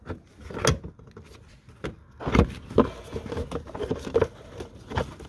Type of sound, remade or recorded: recorded